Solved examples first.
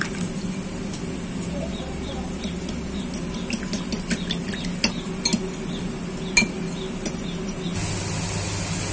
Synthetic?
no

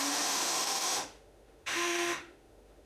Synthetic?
yes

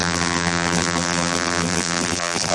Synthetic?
yes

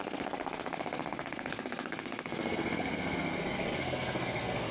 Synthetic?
yes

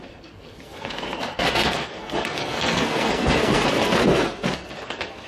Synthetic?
yes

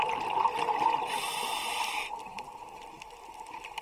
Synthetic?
no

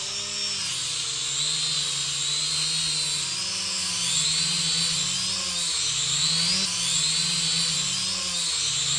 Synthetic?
no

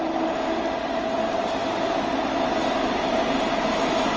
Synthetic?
no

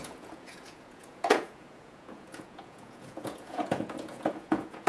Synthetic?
yes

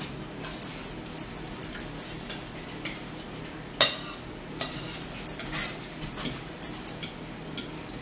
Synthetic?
no